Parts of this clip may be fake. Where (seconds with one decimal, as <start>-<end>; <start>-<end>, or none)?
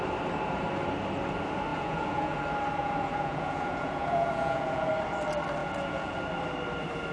1.7-2.4; 2.8-4.9; 5.6-6.1